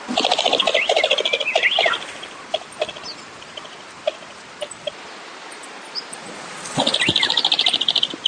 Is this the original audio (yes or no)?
yes